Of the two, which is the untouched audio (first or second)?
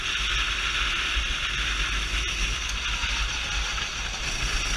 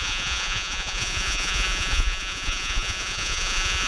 first